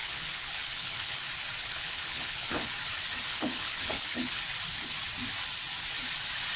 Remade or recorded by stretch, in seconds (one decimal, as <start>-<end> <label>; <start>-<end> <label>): 0.0-1.2 remade; 1.2-1.6 recorded; 1.6-2.7 remade; 2.7-3.3 recorded; 3.3-4.4 remade; 4.4-6.6 recorded